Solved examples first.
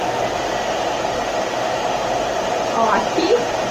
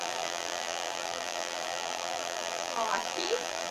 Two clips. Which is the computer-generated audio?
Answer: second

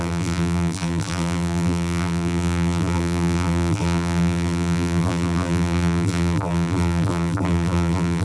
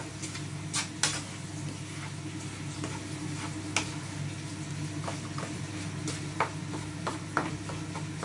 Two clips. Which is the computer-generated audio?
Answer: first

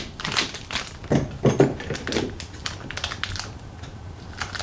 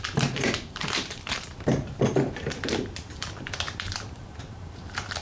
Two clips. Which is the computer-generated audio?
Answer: second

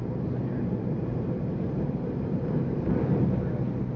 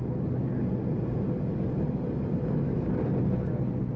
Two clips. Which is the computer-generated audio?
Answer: first